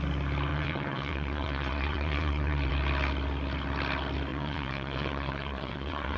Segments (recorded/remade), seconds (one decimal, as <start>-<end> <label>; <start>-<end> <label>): 0.0-0.5 recorded; 0.5-2.7 remade; 2.7-4.3 recorded; 4.3-6.2 remade